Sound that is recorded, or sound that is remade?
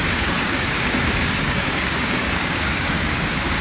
remade